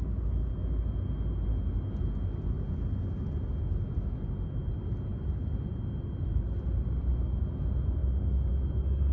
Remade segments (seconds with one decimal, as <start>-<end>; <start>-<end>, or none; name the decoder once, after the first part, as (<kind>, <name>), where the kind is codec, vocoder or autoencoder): 5.1-7.2 (vocoder, BigVGAN v2)

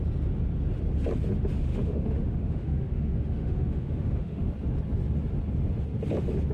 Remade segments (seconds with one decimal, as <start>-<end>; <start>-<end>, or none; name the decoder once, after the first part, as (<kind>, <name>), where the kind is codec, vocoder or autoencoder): 1.7-4.5 (autoencoder, DAC-VAE)

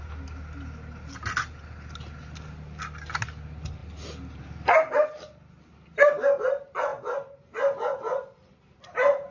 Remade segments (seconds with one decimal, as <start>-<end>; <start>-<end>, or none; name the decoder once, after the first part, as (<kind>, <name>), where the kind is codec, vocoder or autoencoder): none

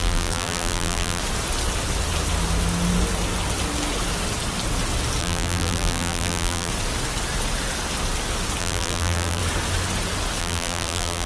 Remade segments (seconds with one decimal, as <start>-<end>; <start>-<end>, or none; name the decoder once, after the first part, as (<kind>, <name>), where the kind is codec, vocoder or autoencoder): 0.0-1.2 (vocoder, BigVGAN v2); 5.2-6.7; 8.6-9.4; 10.4-11.3

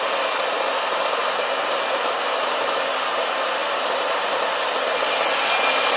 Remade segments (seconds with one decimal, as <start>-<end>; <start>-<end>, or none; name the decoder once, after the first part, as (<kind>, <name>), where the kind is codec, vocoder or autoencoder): 1.2-3.2 (vocoder, BigVGAN v2); 3.6-4.4